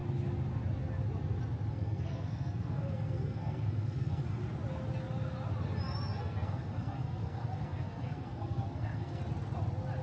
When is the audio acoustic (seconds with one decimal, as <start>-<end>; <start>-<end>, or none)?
0.0-1.7; 4.4-6.2; 9.2-10.0